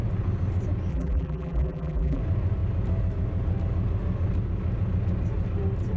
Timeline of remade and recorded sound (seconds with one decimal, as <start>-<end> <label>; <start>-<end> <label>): 0.0-0.9 recorded; 0.9-2.2 remade; 2.2-6.0 recorded